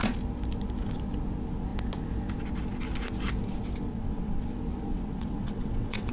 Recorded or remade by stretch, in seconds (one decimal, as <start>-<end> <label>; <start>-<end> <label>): 0.0-3.9 recorded; 3.9-4.5 remade; 4.5-4.9 recorded; 4.9-6.1 remade